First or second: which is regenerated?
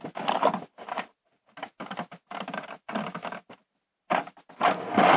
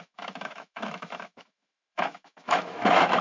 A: second